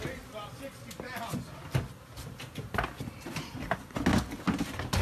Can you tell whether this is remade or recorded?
recorded